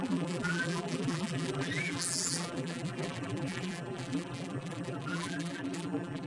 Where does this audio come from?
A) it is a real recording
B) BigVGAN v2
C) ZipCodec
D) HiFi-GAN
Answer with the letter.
B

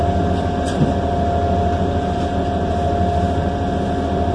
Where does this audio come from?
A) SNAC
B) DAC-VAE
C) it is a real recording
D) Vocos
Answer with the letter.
C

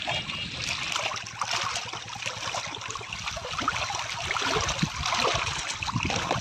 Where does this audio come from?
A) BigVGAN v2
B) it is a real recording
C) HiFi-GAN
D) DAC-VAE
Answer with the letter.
B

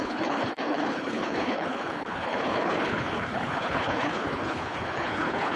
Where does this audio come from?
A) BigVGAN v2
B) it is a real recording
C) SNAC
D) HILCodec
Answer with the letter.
D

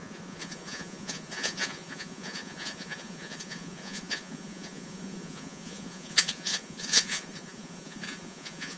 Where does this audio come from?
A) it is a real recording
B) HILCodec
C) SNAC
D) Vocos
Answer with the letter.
D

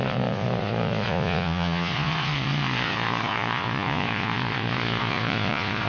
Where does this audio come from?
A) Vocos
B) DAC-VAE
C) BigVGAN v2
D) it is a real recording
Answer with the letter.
A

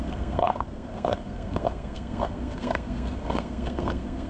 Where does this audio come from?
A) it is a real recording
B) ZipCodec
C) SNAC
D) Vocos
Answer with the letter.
C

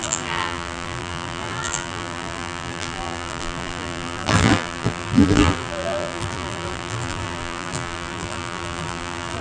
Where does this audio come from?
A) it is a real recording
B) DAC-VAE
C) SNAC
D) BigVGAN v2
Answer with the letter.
D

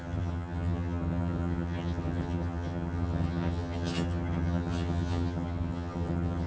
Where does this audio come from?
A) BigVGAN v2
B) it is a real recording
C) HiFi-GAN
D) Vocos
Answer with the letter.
C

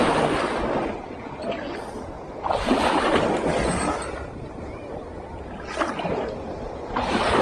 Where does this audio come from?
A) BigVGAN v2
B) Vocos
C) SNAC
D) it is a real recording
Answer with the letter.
D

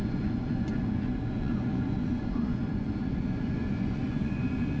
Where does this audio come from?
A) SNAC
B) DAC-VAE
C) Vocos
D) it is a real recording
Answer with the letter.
C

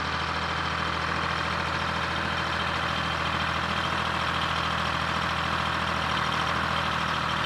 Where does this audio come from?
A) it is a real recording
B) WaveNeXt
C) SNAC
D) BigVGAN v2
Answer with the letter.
A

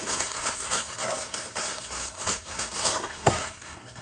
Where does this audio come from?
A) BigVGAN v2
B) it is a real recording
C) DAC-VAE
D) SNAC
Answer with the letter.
D